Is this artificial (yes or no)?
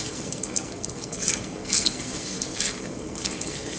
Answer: yes